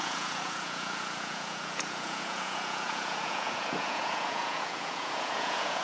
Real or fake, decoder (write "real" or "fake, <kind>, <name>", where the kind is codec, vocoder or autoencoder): fake, vocoder, Vocos